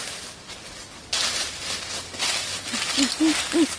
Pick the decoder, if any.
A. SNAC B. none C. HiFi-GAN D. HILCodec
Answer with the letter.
B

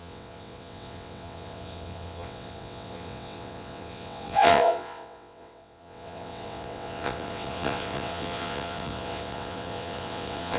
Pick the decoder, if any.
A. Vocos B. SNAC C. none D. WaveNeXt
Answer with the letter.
D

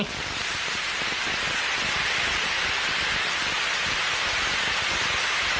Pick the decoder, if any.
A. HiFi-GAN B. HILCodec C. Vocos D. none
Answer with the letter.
D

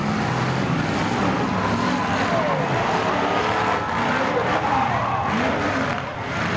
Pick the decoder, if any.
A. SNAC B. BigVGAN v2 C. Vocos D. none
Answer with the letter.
B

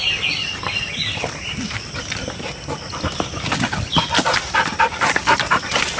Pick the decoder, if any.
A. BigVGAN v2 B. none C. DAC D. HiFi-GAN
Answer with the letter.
B